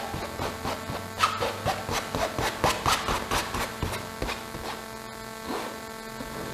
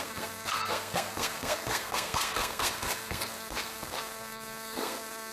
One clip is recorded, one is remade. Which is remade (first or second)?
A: second